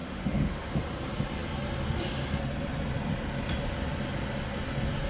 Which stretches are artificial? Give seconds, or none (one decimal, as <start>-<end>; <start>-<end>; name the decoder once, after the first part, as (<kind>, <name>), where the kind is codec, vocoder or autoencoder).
0.0-0.7 (autoencoder, DAC-VAE)